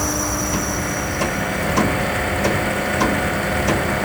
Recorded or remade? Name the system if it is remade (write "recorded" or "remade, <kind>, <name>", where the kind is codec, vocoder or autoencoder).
recorded